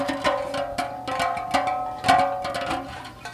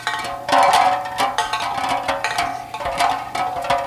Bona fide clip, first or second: first